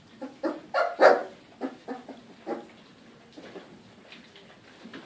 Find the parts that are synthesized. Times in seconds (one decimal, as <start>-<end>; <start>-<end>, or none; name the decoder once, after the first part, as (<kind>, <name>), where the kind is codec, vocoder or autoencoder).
none